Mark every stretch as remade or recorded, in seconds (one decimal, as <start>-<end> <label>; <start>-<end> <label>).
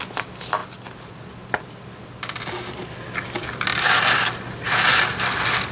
0.0-5.7 recorded